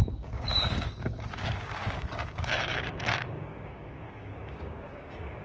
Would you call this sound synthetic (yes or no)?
yes